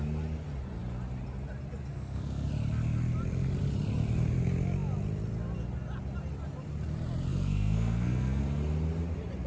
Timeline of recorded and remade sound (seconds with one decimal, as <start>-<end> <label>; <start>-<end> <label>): 0.0-1.9 recorded; 1.9-2.5 remade; 2.5-7.3 recorded; 7.3-8.4 remade; 8.4-9.5 recorded